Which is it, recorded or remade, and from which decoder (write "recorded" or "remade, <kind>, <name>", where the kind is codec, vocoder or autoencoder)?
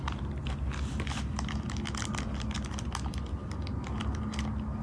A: recorded